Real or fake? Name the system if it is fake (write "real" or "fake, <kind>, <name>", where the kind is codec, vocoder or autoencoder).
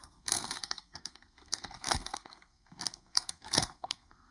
fake, codec, SNAC